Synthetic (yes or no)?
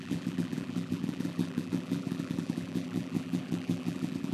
yes